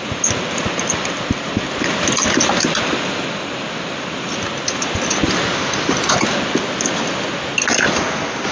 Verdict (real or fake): real